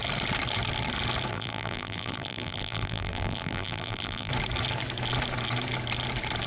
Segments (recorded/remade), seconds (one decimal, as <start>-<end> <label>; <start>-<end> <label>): 0.0-1.3 recorded; 1.3-4.3 remade; 4.3-6.5 recorded